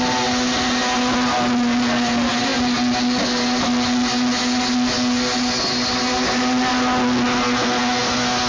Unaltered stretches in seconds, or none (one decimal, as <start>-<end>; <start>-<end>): 0.0-8.5